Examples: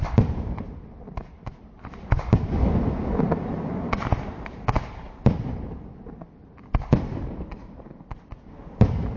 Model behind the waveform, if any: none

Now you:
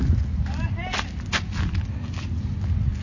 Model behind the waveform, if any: none